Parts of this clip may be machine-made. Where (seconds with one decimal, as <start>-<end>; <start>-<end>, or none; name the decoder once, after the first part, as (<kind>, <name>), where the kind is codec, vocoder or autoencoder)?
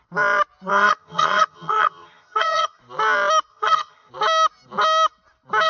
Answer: 0.7-2.8 (vocoder, HiFi-GAN); 3.5-4.1